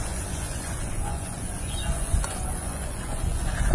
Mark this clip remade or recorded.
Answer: remade